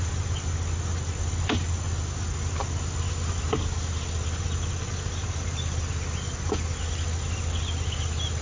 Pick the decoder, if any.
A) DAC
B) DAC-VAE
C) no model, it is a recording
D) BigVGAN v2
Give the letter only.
C